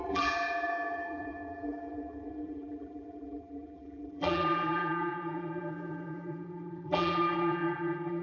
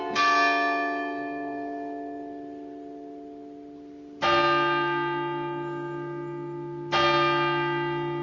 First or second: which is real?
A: second